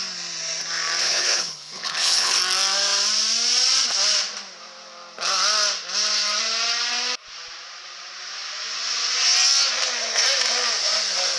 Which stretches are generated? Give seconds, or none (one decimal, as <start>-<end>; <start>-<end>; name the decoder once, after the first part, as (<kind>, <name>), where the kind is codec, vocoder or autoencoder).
1.0-2.4 (codec, HILCodec)